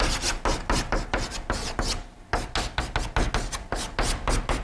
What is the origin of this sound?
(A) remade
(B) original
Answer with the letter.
B